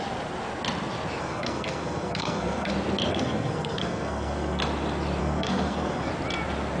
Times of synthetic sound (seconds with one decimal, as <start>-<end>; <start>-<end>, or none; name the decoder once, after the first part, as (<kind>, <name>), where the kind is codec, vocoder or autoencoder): 1.2-2.7 (codec, SNAC); 3.1-4.6; 5.2-6.1